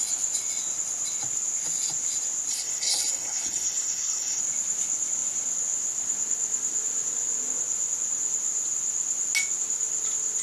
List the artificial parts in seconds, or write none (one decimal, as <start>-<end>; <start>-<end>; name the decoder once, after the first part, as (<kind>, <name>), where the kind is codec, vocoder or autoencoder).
2.5-4.4 (codec, HILCodec)